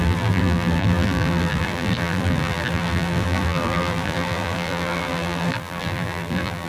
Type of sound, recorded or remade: remade